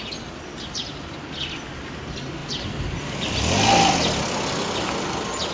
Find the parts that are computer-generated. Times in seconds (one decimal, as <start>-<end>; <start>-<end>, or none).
none